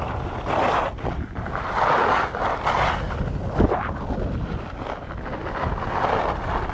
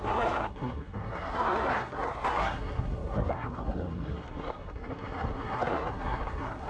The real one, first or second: first